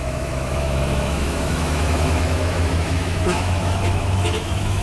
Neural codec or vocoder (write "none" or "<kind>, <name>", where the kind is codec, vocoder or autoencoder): autoencoder, DAC-VAE